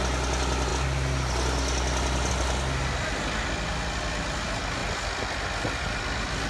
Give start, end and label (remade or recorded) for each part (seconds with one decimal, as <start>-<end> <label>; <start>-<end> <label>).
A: 0.0-6.5 recorded